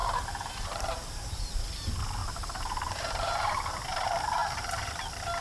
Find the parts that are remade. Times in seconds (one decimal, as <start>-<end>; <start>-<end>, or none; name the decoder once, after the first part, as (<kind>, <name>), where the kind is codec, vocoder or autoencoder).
0.0-1.7 (vocoder, BigVGAN v2); 2.2-3.7; 4.4-4.9